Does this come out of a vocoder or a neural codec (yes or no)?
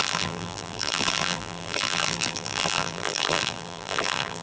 yes